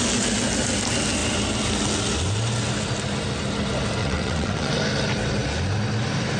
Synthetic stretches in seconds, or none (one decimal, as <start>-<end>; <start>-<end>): 4.0-4.7